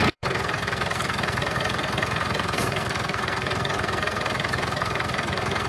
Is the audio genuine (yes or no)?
no